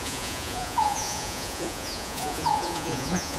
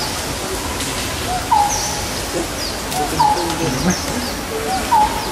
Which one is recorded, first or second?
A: second